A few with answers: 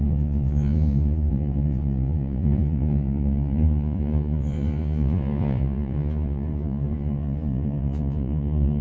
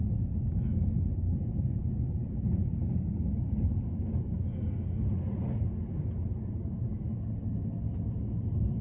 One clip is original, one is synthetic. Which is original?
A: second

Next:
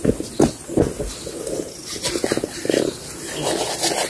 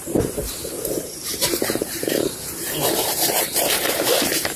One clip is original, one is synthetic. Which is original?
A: first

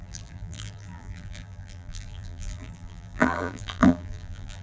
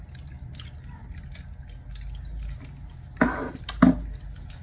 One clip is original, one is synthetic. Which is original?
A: second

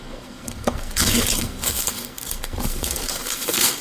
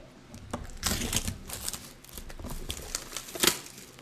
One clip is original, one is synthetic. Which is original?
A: second